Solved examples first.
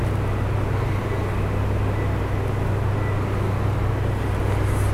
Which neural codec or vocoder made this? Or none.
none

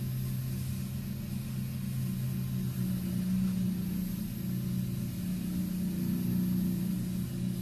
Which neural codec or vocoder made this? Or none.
none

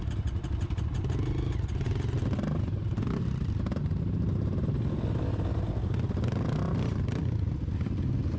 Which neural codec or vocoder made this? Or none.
none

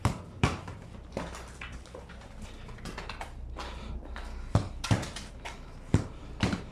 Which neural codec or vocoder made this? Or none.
vocoder, BigVGAN v2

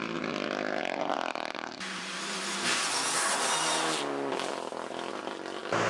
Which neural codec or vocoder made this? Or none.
none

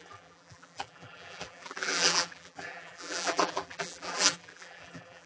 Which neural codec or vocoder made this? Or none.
vocoder, BigVGAN v2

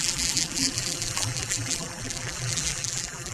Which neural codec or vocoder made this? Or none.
vocoder, BigVGAN v2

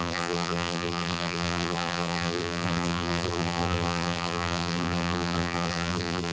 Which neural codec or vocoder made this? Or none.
vocoder, BigVGAN v2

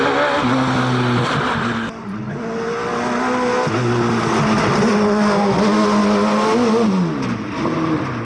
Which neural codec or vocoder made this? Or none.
none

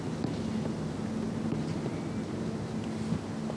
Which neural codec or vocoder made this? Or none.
none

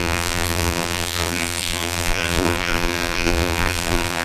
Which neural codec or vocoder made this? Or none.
vocoder, BigVGAN v2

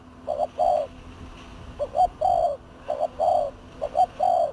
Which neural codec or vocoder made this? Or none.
none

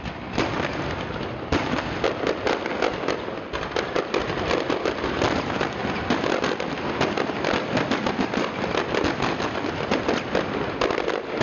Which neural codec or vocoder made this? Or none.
none